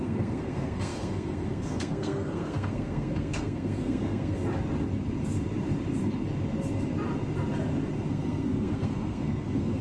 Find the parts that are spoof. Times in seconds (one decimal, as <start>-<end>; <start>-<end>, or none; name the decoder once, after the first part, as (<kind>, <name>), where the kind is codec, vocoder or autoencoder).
0.0-4.4 (codec, SNAC); 8.1-9.8